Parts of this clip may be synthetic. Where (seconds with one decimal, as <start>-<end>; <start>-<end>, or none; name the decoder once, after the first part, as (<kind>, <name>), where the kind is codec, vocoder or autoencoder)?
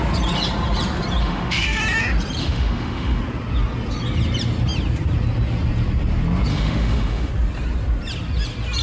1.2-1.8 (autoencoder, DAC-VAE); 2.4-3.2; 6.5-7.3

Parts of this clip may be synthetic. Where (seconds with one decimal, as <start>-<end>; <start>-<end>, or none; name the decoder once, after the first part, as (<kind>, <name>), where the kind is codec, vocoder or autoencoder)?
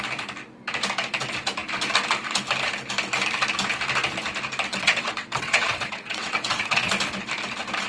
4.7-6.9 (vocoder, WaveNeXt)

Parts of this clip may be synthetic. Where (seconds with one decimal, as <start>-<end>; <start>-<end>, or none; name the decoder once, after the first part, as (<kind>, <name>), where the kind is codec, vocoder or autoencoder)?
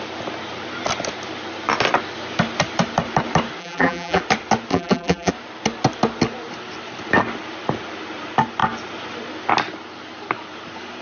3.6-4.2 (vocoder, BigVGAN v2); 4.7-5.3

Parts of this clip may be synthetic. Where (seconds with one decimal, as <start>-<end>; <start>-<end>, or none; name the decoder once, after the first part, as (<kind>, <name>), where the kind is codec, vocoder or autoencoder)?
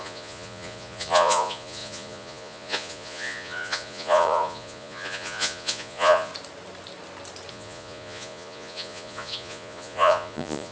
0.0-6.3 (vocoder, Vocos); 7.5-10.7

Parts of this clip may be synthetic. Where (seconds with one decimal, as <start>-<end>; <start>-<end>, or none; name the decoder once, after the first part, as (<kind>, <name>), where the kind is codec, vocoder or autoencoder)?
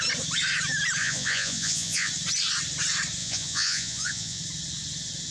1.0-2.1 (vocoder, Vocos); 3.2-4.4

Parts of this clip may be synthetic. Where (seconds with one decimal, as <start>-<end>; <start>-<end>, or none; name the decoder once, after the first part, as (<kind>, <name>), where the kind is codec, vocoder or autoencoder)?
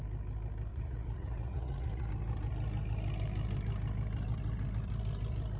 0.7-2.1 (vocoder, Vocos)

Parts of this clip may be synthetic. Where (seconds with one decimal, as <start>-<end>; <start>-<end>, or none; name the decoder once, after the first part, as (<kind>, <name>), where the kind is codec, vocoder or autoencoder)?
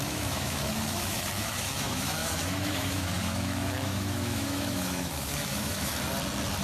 0.0-5.9 (autoencoder, DAC-VAE)